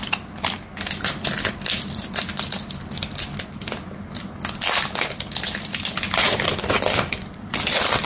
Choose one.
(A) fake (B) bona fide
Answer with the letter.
A